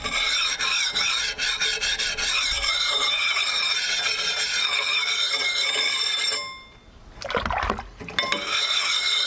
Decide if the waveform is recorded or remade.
recorded